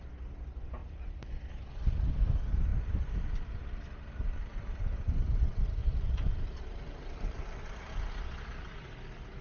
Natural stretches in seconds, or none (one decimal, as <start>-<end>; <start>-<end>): 0.0-0.8; 1.3-2.7; 3.2-5.8; 8.1-9.4